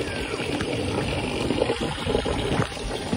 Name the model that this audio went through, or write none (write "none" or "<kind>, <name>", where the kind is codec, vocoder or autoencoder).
none